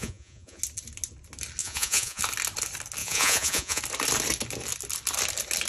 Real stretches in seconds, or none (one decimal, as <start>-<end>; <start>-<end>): 0.6-1.6; 2.2-3.0; 3.8-5.7